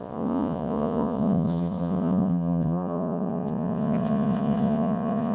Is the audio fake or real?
fake